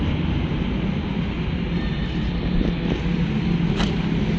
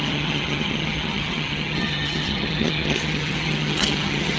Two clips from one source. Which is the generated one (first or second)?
second